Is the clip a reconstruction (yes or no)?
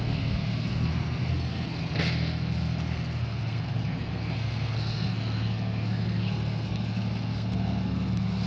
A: yes